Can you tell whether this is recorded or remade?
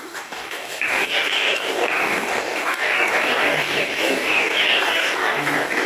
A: remade